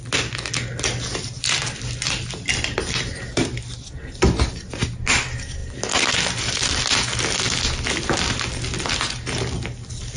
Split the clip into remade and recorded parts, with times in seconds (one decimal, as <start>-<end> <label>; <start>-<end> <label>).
0.0-1.1 recorded; 1.1-2.3 remade; 2.3-5.6 recorded; 5.6-7.2 remade; 7.2-10.2 recorded

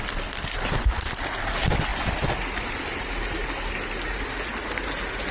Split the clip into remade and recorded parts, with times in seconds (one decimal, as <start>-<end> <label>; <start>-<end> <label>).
0.0-5.3 recorded

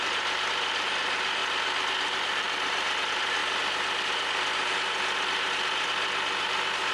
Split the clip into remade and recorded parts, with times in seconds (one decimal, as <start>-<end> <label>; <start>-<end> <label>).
0.0-6.9 recorded